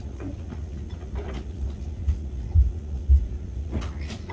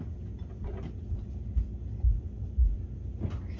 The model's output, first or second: first